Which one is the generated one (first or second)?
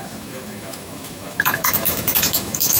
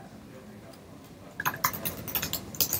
first